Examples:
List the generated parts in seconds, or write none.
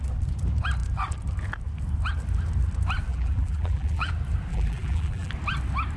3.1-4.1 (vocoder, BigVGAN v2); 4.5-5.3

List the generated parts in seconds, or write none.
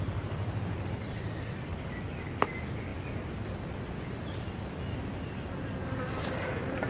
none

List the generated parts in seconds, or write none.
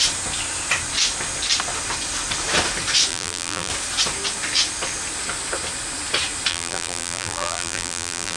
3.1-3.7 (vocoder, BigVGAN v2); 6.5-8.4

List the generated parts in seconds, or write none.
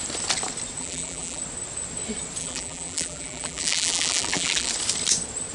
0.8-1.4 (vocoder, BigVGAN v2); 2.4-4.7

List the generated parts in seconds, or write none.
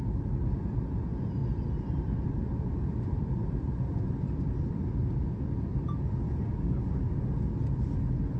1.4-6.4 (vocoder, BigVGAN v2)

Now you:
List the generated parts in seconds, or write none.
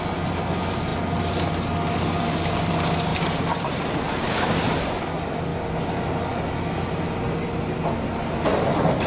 3.1-4.5 (vocoder, BigVGAN v2)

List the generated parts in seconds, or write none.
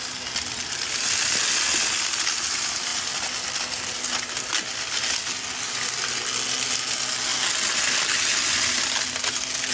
none